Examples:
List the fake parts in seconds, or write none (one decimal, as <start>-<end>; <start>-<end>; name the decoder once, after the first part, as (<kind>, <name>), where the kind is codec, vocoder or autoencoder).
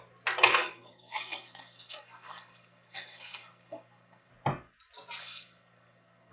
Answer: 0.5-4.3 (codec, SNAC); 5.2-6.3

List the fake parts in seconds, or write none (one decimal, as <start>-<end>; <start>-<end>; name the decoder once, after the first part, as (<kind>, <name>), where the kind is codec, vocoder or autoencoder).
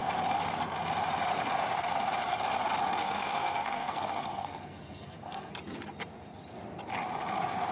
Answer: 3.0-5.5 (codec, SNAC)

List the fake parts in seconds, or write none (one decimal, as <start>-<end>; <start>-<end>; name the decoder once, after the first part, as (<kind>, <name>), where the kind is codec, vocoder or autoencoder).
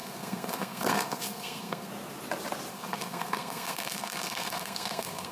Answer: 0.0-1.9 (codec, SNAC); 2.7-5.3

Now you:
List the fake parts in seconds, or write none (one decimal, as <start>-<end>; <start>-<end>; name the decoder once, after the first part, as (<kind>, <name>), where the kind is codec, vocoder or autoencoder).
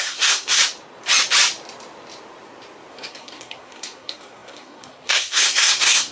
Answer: 0.0-0.6 (codec, SNAC); 2.9-6.1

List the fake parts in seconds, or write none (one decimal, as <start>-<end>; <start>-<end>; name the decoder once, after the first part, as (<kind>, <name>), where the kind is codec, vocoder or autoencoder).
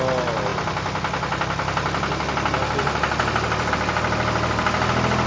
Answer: none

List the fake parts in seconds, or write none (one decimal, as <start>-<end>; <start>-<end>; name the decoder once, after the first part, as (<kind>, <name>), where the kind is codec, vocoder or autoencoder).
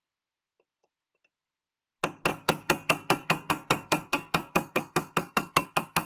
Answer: 2.3-6.1 (codec, SNAC)